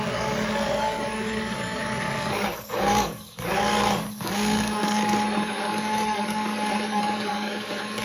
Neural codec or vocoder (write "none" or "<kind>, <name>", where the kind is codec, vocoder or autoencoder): codec, DAC